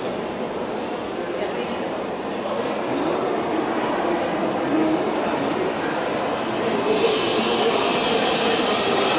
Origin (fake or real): real